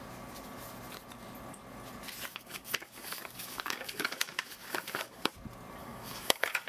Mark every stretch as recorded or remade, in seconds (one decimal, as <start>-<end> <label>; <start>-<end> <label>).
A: 0.0-2.3 recorded; 2.3-5.3 remade; 5.3-5.8 recorded; 5.8-6.7 remade